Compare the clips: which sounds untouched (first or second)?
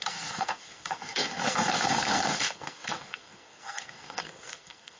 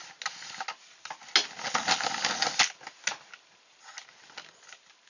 second